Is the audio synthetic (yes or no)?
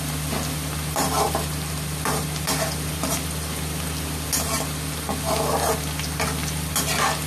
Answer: no